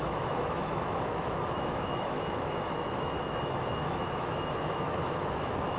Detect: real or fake fake